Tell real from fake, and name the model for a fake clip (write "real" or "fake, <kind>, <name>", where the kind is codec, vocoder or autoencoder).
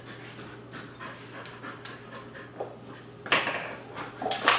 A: real